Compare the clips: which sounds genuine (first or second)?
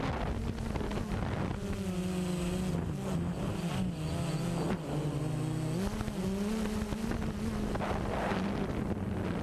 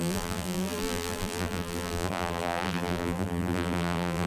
first